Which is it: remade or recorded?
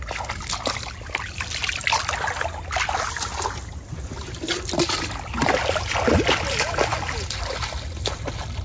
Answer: recorded